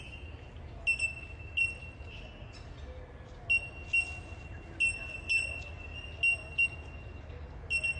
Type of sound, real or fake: real